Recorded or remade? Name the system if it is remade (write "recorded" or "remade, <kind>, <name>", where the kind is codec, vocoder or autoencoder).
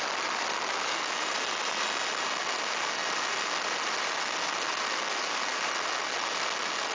recorded